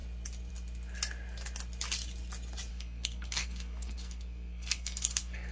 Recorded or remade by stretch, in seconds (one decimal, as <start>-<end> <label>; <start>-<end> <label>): 0.0-2.7 recorded; 2.7-5.5 remade